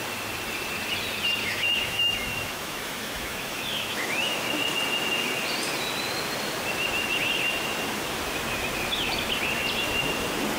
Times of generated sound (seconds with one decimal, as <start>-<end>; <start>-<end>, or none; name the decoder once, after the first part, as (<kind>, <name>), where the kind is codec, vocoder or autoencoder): 1.4-4.5 (autoencoder, DAC-VAE)